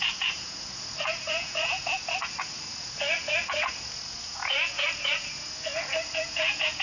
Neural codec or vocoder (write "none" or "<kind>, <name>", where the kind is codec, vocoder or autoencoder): vocoder, Vocos